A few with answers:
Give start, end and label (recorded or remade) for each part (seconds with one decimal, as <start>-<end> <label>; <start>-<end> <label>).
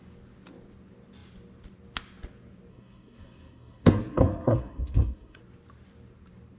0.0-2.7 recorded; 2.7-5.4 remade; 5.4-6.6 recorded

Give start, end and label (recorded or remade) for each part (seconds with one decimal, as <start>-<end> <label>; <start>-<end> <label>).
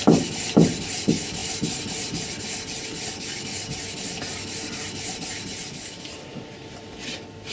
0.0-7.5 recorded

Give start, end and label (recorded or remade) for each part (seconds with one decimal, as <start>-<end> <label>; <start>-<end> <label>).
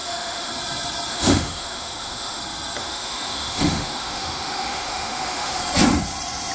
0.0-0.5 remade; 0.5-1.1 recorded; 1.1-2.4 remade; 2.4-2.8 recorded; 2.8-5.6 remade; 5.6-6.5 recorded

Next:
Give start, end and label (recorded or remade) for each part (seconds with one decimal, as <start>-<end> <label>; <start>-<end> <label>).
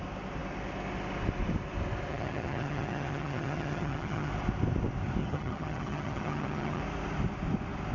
0.0-2.1 recorded; 2.1-4.3 remade; 4.3-5.2 recorded; 5.2-6.8 remade; 6.8-7.9 recorded